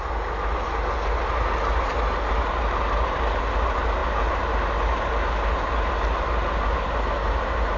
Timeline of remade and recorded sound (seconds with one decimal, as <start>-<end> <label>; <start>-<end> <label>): 0.0-7.8 recorded